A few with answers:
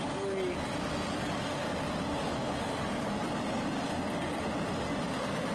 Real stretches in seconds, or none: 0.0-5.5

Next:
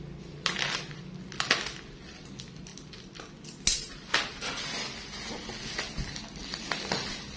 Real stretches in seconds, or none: 0.0-7.4

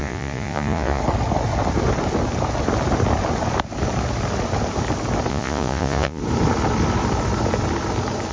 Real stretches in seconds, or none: 1.0-5.3; 6.2-8.3

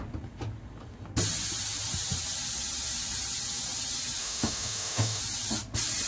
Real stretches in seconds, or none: 0.0-4.2; 5.2-6.1

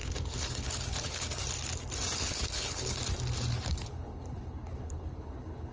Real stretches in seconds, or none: 1.4-2.2; 3.0-3.7

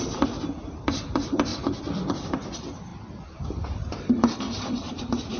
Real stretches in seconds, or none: 1.5-2.1; 2.9-4.0

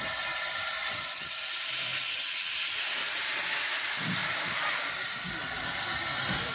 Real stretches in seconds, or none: 0.0-0.8; 1.4-1.9; 2.5-6.5

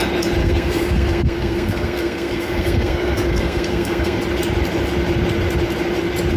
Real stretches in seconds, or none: 0.0-0.4; 4.2-6.4